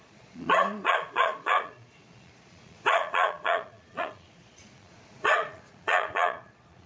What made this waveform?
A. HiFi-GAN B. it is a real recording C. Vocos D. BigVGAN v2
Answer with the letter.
C